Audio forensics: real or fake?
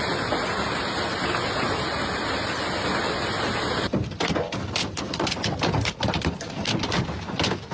real